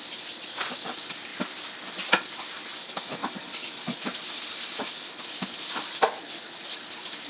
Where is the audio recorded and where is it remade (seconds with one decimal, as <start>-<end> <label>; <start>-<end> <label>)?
0.0-7.3 recorded